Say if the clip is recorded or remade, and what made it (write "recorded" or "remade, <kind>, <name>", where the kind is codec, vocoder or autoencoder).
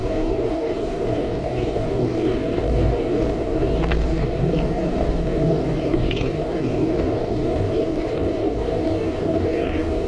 remade, codec, DAC